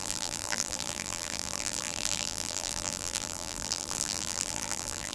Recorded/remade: remade